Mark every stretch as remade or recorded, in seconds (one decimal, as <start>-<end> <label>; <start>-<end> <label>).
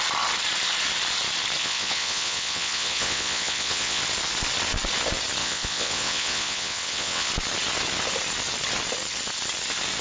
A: 0.0-1.6 recorded; 1.6-4.0 remade; 4.0-5.4 recorded; 5.4-7.3 remade; 7.3-10.0 recorded